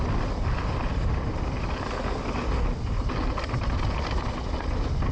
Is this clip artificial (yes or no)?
no